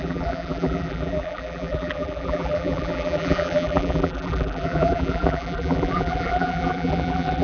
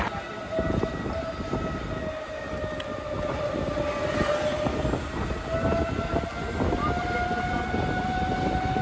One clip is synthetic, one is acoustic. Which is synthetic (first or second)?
first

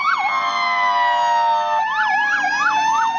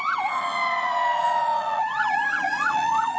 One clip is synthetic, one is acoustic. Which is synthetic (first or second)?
second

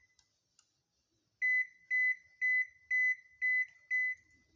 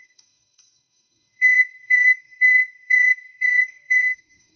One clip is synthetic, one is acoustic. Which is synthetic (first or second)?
second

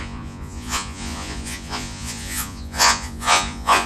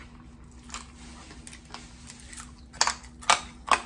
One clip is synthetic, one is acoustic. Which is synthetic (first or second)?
first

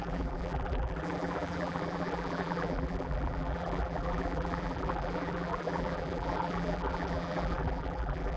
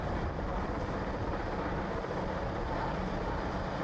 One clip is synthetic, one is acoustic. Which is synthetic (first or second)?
first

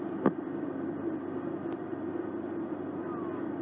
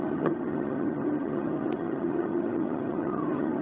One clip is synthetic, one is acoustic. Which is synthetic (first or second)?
second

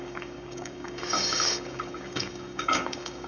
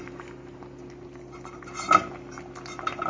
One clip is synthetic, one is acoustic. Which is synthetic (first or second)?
first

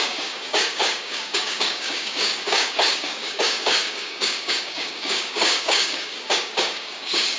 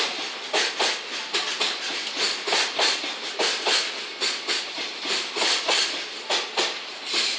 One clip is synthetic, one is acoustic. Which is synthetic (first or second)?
first